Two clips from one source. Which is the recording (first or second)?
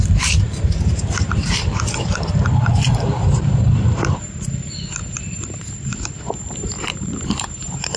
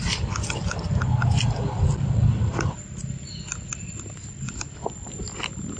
second